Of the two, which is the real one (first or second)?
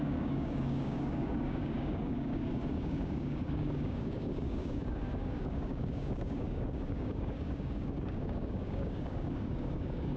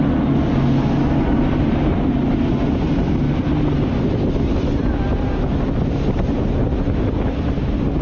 second